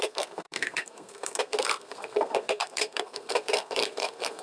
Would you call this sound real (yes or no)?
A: no